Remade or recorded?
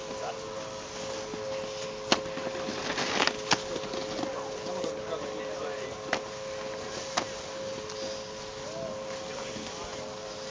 recorded